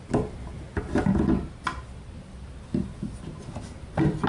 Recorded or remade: recorded